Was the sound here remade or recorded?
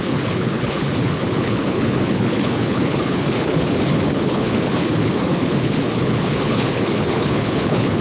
remade